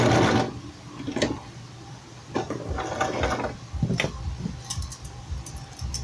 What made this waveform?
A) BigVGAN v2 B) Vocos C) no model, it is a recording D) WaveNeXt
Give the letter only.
C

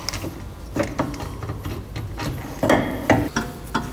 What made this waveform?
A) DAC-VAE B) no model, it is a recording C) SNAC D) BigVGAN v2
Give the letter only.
B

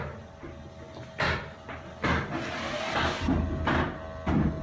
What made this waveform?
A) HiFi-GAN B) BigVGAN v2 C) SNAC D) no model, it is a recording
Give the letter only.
D